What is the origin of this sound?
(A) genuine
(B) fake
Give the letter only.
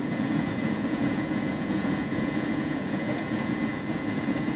B